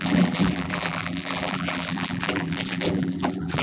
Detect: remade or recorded remade